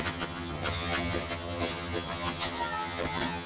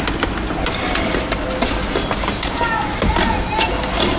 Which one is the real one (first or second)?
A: second